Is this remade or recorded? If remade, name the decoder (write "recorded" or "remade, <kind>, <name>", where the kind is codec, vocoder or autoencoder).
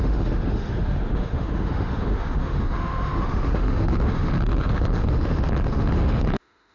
remade, autoencoder, DAC-VAE